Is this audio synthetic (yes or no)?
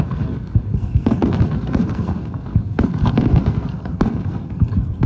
yes